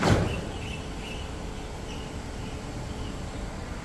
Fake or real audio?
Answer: real